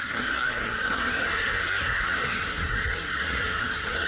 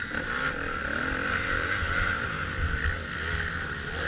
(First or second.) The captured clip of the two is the second